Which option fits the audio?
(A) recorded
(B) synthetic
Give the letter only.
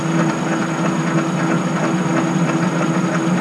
A